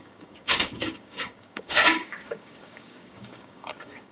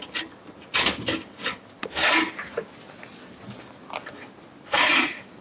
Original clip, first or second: second